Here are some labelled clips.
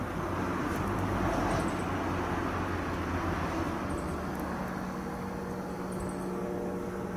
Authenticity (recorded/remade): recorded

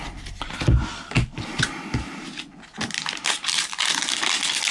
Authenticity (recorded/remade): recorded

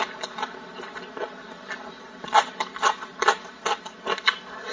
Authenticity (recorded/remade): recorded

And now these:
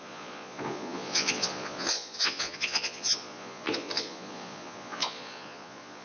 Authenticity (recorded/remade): remade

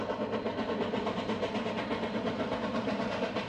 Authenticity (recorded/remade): recorded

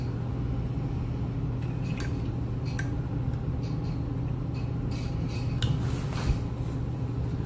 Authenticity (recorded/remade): recorded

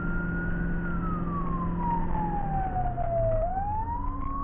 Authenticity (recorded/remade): recorded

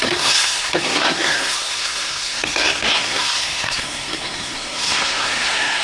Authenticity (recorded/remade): remade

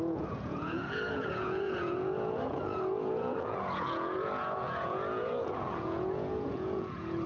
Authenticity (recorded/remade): remade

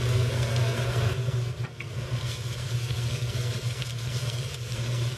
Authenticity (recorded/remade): remade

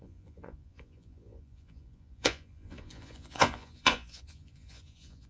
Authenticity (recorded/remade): remade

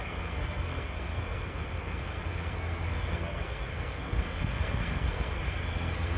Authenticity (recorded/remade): remade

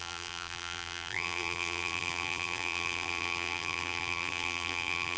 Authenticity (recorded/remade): remade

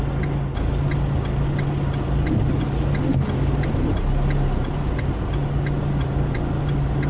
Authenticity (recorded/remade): recorded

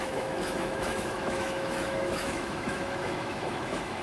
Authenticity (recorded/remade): remade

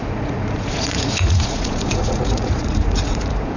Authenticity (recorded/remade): remade